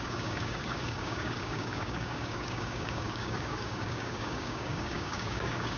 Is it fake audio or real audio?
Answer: fake